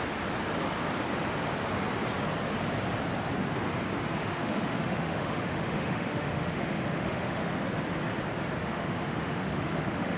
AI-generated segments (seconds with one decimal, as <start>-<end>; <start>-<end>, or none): 4.2-7.6; 8.6-10.2

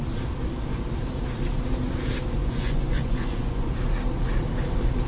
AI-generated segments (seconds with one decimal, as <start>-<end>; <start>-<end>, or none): 2.4-3.7

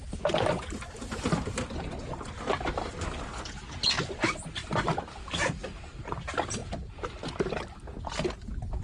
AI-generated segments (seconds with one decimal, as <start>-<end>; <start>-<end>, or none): 4.6-5.3; 6.6-8.3

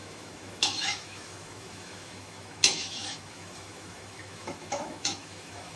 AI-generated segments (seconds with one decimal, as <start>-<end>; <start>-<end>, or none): 0.0-5.8